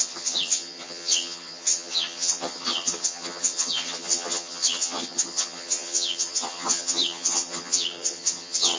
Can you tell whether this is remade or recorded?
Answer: remade